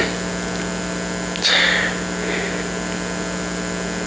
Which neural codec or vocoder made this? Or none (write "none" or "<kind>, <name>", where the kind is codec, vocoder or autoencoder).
none